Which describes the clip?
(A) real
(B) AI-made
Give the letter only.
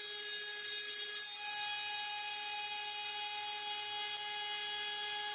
A